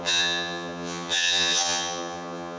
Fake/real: fake